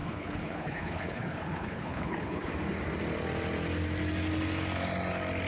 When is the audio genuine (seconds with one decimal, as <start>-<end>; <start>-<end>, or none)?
2.5-5.5

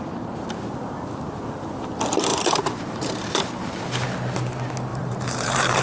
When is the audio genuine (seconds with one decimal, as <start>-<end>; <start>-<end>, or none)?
0.0-2.3; 3.8-4.9

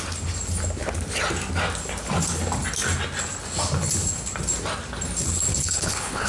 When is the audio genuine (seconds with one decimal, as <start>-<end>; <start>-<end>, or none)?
0.0-5.5

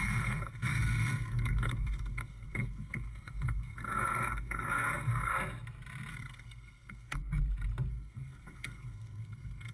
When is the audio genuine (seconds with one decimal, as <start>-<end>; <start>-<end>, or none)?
5.3-6.1; 7.2-7.9

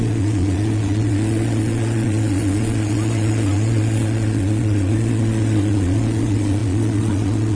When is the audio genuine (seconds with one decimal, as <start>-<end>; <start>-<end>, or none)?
none

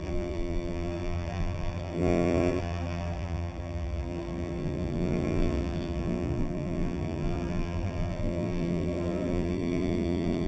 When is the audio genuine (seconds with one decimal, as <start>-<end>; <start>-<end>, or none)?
none

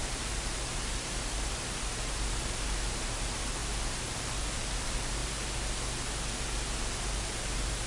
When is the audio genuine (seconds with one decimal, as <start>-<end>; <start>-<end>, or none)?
3.6-4.6; 5.2-7.0